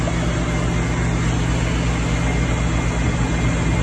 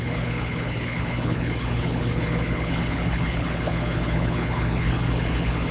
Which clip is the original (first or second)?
first